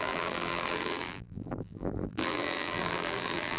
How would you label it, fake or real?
fake